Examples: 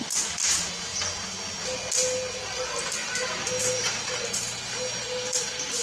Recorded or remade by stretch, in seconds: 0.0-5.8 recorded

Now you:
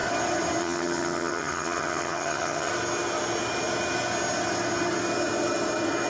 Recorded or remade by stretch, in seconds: 0.0-0.6 recorded; 0.6-2.7 remade; 2.7-6.1 recorded

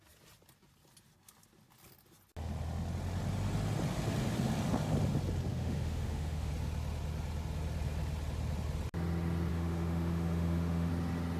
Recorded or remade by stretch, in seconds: 0.0-5.5 recorded; 5.5-6.5 remade; 6.5-9.5 recorded; 9.5-10.9 remade; 10.9-11.4 recorded